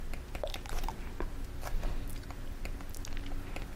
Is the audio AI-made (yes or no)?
no